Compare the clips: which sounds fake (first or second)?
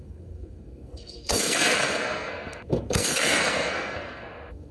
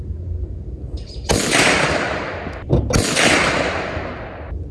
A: first